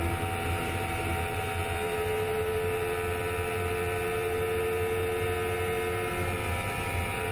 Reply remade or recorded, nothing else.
recorded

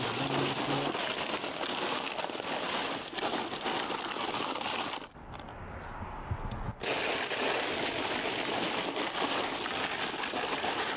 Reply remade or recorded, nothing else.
recorded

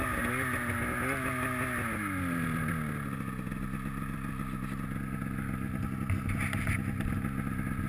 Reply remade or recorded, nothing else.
recorded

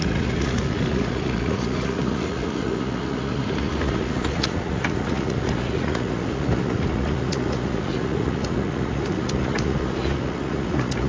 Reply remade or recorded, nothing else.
remade